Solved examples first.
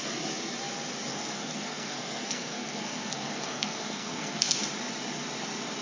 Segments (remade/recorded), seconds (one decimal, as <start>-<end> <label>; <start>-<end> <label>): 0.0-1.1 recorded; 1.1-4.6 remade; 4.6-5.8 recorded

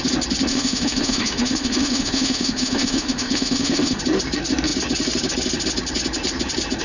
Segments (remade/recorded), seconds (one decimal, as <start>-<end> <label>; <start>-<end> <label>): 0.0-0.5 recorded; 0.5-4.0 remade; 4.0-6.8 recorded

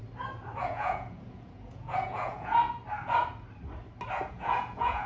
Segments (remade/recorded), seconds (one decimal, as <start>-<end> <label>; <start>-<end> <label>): 0.0-0.6 recorded; 0.6-2.6 remade; 2.6-4.2 recorded; 4.2-5.1 remade

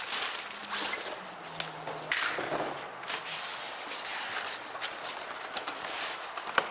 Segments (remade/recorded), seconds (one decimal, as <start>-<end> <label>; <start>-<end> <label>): 0.0-6.7 recorded

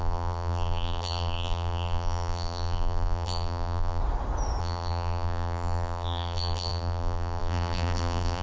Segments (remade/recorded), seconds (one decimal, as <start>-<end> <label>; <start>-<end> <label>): 0.0-4.0 remade; 4.0-4.6 recorded; 4.6-8.4 remade

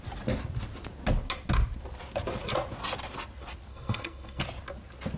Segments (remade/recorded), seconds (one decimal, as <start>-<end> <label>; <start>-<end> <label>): 0.0-3.7 recorded; 3.7-4.4 remade; 4.4-5.2 recorded

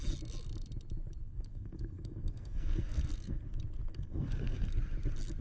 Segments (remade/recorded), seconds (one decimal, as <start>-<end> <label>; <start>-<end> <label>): 0.0-1.2 recorded; 1.2-3.4 remade; 3.4-3.9 recorded; 3.9-4.7 remade; 4.7-5.4 recorded